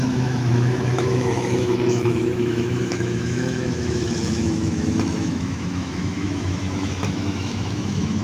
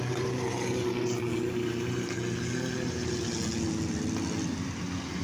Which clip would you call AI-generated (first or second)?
first